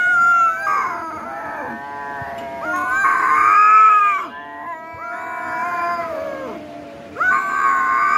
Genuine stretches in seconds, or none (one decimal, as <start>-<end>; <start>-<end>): 0.0-3.1; 4.0-5.6